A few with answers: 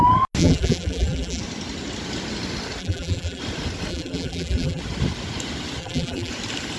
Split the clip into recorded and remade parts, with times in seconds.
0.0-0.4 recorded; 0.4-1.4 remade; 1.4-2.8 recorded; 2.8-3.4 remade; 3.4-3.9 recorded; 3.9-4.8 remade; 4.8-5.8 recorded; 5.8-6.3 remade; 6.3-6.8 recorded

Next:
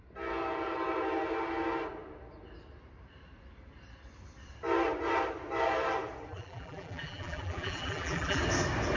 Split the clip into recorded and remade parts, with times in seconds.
0.0-6.3 recorded; 6.3-8.4 remade; 8.4-9.0 recorded

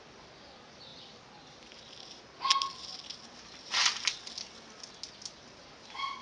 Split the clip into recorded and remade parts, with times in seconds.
0.0-6.2 recorded

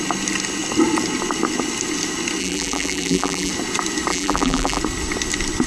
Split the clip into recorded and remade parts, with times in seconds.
0.0-2.4 recorded; 2.4-3.5 remade; 3.5-4.1 recorded; 4.1-4.8 remade; 4.8-5.7 recorded

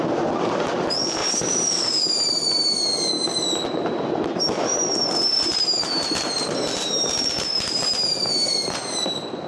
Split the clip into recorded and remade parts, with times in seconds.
0.0-1.2 recorded; 1.2-1.9 remade; 1.9-4.7 recorded; 4.7-8.9 remade; 8.9-9.5 recorded

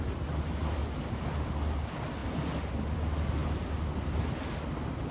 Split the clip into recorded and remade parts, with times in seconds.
0.0-5.1 recorded